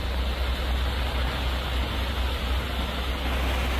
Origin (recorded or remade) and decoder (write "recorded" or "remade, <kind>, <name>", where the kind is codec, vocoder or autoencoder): recorded